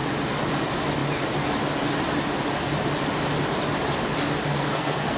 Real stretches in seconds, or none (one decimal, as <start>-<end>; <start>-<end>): 0.0-4.5